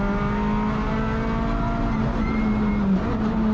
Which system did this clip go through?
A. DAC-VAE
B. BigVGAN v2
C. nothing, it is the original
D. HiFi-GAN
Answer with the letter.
C